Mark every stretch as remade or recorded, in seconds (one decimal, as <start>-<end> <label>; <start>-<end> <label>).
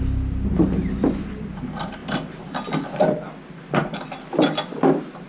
0.0-5.3 recorded